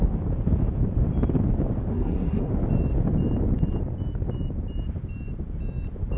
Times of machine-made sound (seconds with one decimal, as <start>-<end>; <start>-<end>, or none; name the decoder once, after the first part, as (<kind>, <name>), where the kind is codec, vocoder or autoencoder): 1.9-2.5 (codec, SNAC)